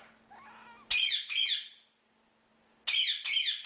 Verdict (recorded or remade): recorded